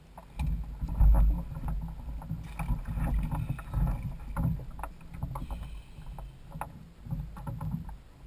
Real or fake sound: real